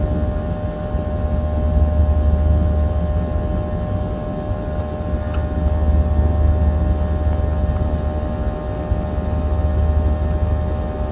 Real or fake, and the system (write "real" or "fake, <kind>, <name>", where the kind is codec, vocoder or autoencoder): real